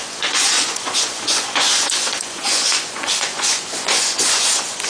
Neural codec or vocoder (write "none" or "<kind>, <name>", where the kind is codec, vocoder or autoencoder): vocoder, Vocos